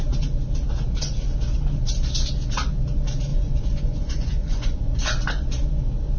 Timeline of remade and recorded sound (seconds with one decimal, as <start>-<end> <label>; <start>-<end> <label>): 0.0-3.3 recorded; 3.3-5.0 remade; 5.0-6.2 recorded